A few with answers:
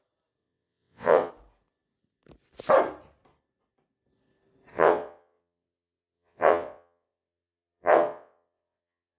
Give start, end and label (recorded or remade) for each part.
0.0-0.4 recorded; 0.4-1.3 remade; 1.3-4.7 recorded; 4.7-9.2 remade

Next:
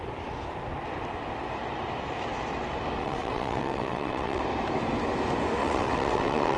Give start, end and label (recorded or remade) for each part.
0.0-3.0 recorded; 3.0-4.4 remade; 4.4-5.6 recorded; 5.6-6.6 remade